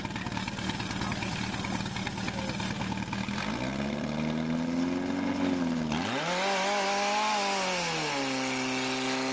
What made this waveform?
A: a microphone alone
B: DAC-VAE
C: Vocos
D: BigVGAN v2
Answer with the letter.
A